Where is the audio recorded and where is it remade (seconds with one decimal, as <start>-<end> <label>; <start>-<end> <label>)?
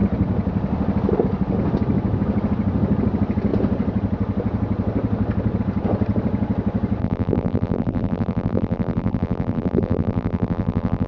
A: 0.0-7.0 recorded; 7.0-11.1 remade